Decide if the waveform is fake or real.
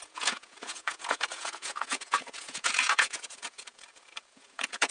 fake